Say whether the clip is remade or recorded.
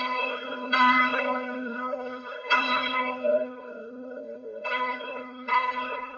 remade